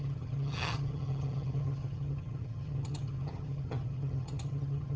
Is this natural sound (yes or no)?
no